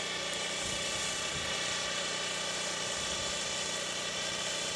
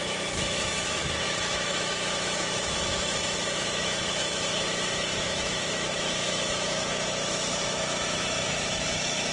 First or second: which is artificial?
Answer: second